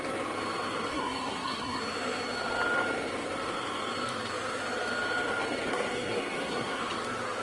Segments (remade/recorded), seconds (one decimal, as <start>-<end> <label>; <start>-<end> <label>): 0.0-0.9 recorded; 0.9-1.8 remade; 1.8-5.7 recorded; 5.7-6.8 remade; 6.8-7.4 recorded